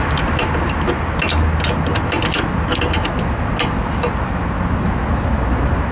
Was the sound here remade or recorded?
recorded